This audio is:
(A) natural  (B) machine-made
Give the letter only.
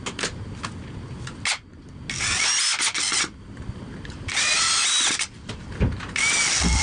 A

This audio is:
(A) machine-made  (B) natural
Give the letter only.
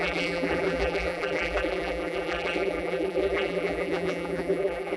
A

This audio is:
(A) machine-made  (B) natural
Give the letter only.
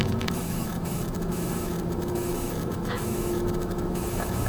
A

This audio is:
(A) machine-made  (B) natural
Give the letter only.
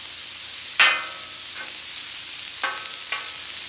B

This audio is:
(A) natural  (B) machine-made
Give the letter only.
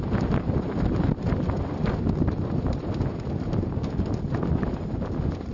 A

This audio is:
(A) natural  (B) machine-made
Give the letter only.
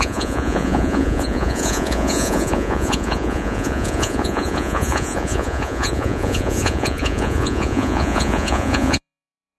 B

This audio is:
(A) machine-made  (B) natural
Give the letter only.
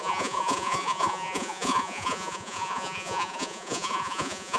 A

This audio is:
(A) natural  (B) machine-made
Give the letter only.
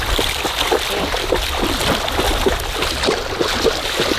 A